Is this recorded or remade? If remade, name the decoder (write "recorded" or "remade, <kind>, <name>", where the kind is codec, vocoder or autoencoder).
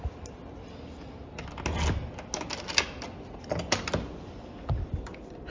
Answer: recorded